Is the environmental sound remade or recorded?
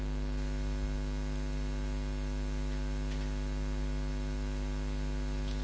recorded